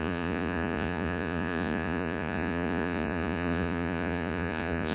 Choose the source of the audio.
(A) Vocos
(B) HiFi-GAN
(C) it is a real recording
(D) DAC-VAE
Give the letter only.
A